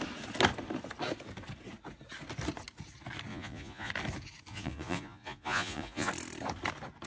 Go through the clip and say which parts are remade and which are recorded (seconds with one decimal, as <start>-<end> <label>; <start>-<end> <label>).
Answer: 0.0-3.3 recorded; 3.3-3.9 remade; 3.9-4.5 recorded; 4.5-6.1 remade; 6.1-7.1 recorded

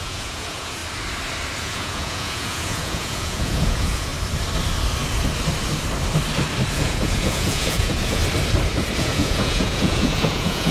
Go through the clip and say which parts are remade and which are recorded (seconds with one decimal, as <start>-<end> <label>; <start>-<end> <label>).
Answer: 0.0-0.8 remade; 0.8-1.6 recorded; 1.6-4.1 remade; 4.1-6.7 recorded; 6.7-8.2 remade; 8.2-9.0 recorded; 9.0-10.7 remade

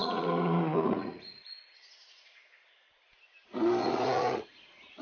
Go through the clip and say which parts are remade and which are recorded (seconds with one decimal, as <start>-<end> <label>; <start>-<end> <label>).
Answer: 0.0-3.0 remade; 3.0-3.8 recorded; 3.8-5.0 remade

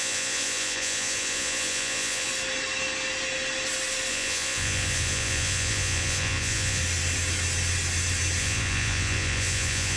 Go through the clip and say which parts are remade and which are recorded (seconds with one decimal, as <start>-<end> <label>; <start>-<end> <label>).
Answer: 0.0-2.3 remade; 2.3-4.1 recorded; 4.1-6.8 remade; 6.8-8.4 recorded; 8.4-10.0 remade

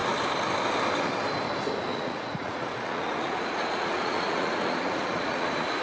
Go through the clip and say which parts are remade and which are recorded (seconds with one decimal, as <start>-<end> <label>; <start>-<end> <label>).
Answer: 0.0-1.9 recorded; 1.9-5.8 remade

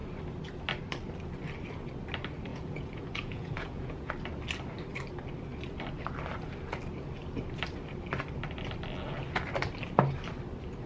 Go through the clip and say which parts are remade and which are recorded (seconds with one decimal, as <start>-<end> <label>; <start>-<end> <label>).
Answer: 0.0-2.5 recorded; 2.5-4.1 remade; 4.1-10.9 recorded